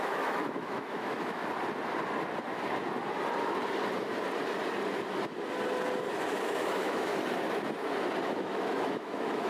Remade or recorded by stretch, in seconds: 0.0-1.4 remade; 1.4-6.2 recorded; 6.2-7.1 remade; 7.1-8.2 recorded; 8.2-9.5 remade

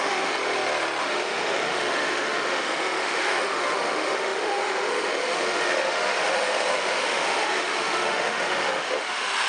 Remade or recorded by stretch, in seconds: 0.0-0.4 remade; 0.4-1.0 recorded; 1.0-9.5 remade